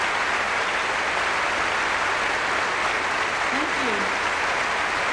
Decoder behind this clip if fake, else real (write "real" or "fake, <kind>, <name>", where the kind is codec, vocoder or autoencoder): real